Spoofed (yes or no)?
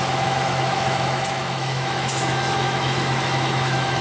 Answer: yes